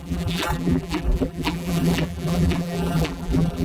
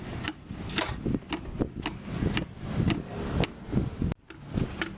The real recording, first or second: second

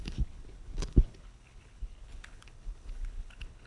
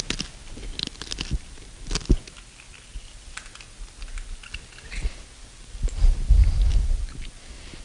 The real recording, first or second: second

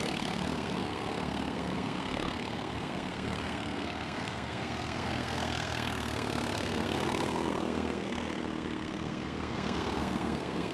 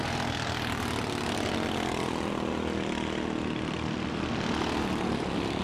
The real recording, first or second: second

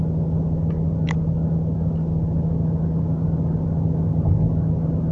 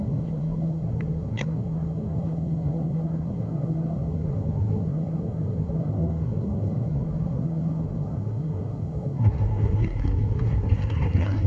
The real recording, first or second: first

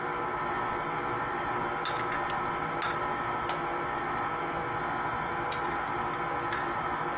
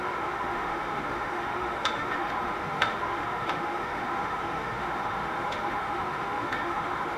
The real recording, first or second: first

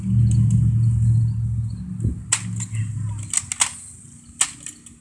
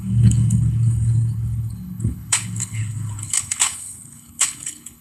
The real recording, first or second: first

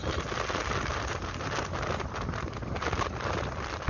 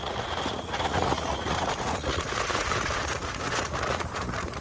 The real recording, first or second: first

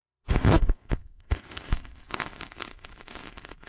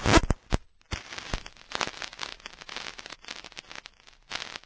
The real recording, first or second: second